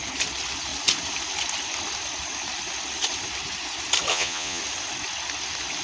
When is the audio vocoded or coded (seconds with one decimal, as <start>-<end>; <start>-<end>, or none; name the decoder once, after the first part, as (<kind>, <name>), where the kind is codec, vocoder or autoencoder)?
4.1-4.6 (vocoder, Vocos)

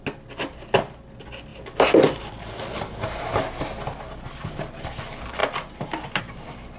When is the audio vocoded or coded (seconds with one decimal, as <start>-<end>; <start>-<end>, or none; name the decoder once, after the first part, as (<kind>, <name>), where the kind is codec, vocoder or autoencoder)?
none